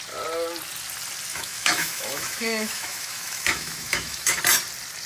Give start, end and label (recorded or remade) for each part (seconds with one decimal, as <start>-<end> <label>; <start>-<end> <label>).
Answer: 0.0-1.3 recorded; 1.3-4.4 remade; 4.4-5.1 recorded